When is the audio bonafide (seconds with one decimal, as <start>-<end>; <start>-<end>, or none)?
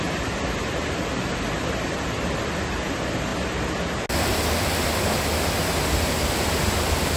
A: 0.0-7.2